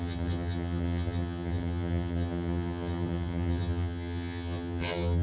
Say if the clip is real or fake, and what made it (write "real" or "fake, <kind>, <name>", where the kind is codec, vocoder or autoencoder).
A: fake, vocoder, HiFi-GAN